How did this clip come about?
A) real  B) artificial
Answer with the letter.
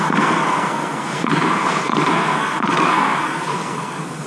B